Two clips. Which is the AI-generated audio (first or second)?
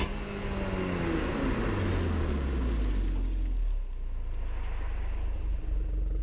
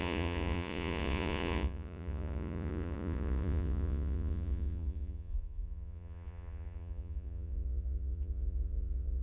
second